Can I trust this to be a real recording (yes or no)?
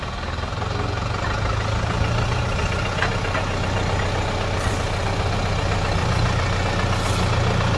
yes